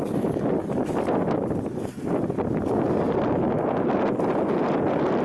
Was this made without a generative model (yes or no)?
yes